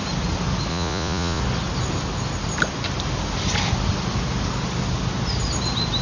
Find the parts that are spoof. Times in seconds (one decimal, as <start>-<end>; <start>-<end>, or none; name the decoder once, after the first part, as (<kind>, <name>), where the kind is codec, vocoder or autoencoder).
0.7-1.4 (vocoder, Vocos)